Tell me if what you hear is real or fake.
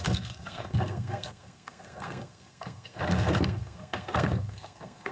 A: fake